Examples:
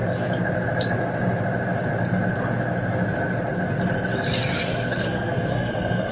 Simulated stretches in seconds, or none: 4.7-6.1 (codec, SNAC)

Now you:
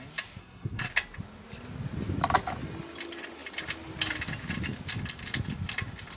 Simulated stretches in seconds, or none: 0.4-0.9 (codec, SNAC)

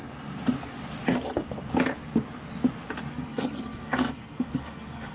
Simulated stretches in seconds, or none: 3.1-5.1 (codec, SNAC)

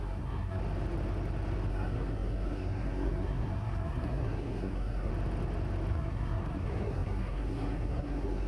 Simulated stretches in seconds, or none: 0.0-0.6 (codec, SNAC); 1.7-5.1; 5.9-8.5

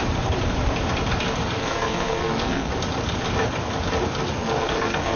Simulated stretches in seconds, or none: 1.6-2.7 (codec, SNAC); 4.4-5.2

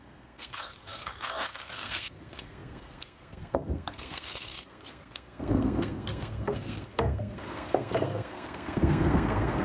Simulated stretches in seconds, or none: 0.0-9.6 (codec, SNAC)